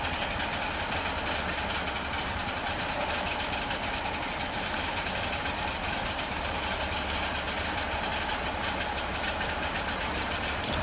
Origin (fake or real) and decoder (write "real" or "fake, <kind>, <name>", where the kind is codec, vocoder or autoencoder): real